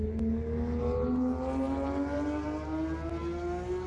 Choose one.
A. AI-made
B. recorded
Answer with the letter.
B